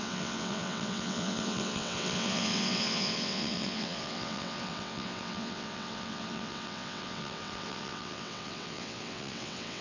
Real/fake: fake